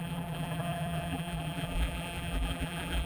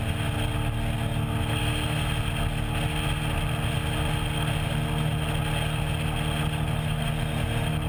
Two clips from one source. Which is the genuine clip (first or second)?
second